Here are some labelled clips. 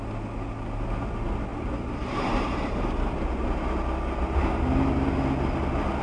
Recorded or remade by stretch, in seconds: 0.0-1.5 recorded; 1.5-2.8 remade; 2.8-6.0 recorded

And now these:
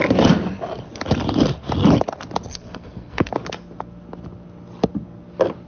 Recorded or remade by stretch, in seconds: 0.0-2.5 recorded; 2.5-3.3 remade; 3.3-5.7 recorded

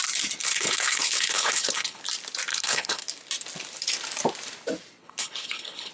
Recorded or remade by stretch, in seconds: 0.0-0.4 recorded; 0.4-2.0 remade; 2.0-2.5 recorded; 2.5-3.0 remade; 3.0-5.0 recorded; 5.0-5.9 remade

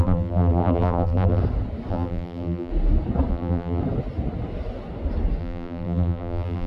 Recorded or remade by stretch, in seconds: 0.0-1.4 remade; 1.4-1.9 recorded; 1.9-2.7 remade; 2.7-3.3 recorded; 3.3-3.8 remade; 3.8-5.4 recorded; 5.4-6.7 remade

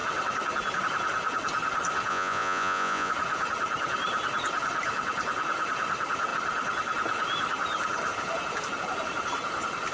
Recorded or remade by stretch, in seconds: 0.0-2.1 recorded; 2.1-3.1 remade; 3.1-9.9 recorded